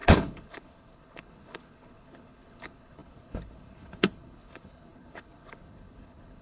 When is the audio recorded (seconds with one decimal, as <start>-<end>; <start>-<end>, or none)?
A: none